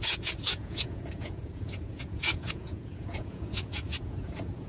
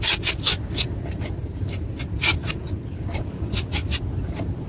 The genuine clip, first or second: second